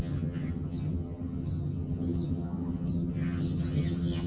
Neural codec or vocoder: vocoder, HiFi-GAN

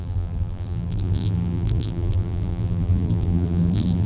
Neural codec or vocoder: vocoder, BigVGAN v2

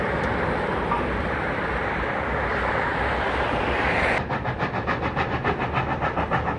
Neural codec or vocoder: none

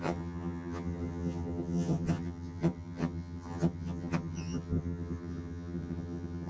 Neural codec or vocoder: vocoder, HiFi-GAN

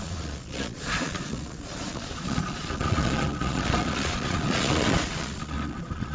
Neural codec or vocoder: vocoder, Vocos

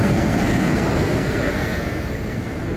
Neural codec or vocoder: codec, SNAC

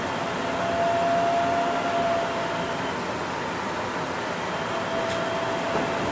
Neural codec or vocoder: none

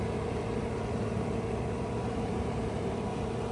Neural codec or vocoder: vocoder, BigVGAN v2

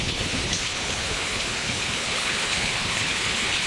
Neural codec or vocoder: codec, HILCodec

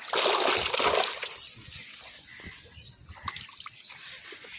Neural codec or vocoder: none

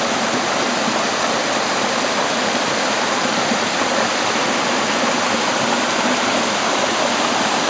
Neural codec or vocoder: none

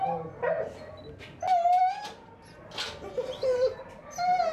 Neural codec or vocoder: none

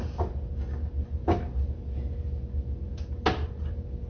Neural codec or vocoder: none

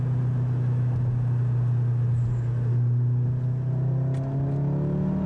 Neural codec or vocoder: none